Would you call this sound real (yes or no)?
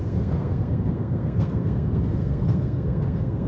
no